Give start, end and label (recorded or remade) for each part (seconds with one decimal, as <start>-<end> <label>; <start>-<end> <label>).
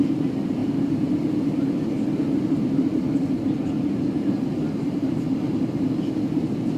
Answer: 0.0-6.8 recorded